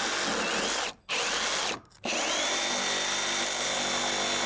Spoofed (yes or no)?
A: no